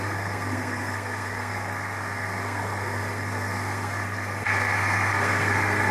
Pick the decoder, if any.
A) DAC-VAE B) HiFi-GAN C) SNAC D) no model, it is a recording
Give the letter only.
C